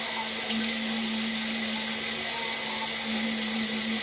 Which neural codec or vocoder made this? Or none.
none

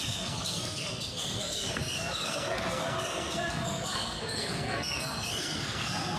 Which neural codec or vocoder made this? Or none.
codec, SNAC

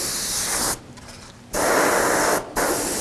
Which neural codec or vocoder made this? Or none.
none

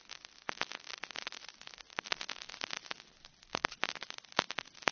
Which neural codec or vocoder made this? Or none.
none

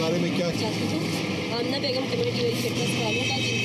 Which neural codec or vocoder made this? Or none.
none